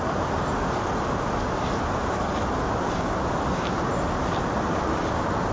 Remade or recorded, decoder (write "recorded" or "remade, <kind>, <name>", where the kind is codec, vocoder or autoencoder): recorded